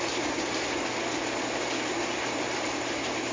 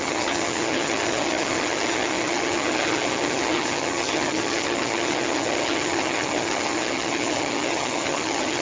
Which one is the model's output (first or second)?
second